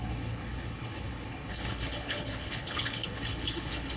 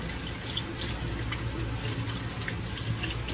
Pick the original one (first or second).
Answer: second